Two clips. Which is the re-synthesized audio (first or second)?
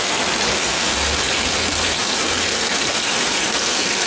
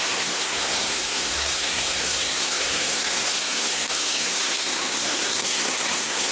second